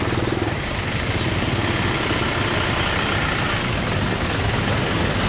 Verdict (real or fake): real